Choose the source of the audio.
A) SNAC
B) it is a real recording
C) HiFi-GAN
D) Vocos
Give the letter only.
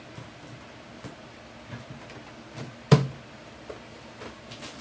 B